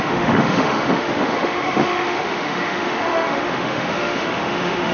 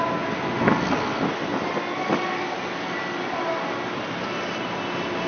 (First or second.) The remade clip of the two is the first